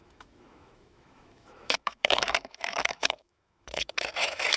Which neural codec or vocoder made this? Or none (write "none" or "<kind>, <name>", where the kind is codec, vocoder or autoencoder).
autoencoder, DAC-VAE